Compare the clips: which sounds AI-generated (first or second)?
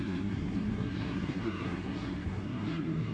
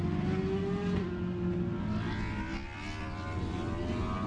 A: first